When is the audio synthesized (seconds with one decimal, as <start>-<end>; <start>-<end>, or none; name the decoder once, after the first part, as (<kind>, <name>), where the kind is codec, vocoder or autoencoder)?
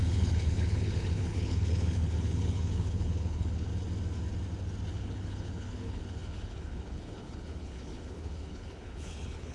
0.0-3.7 (codec, HILCodec); 4.9-9.5